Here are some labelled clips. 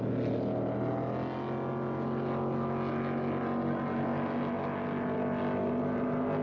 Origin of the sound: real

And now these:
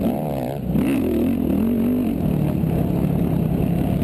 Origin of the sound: real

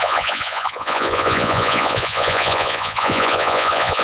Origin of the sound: fake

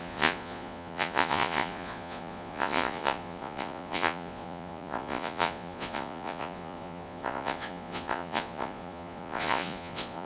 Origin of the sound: fake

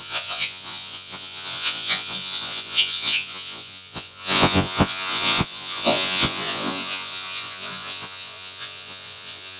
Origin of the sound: fake